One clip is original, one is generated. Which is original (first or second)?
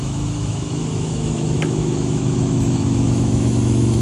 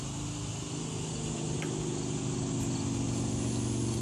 second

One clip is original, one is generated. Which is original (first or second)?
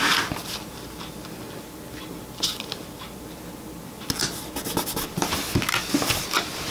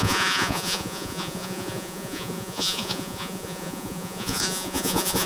first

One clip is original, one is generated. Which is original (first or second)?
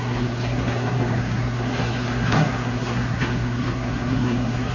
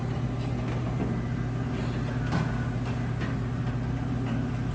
second